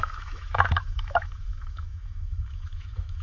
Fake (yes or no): yes